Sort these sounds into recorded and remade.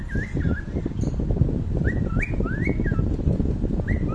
recorded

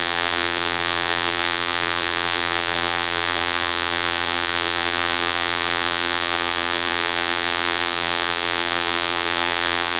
remade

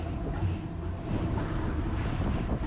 remade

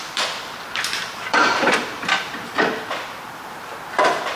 remade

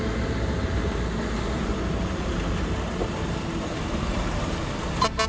remade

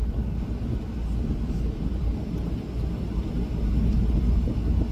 recorded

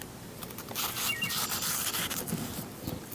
recorded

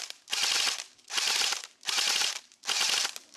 recorded